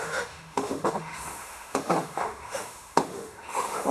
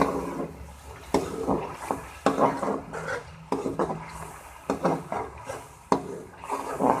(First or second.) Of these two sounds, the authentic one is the second